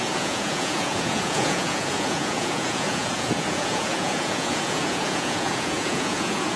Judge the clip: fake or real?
fake